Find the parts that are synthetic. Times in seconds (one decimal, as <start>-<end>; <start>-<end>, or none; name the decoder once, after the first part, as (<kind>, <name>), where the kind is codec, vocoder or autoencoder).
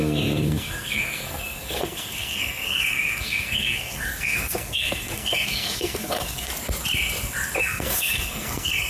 0.0-6.5 (codec, SNAC); 7.6-8.9